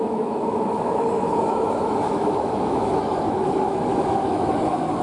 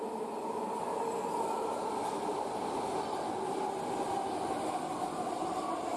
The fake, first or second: first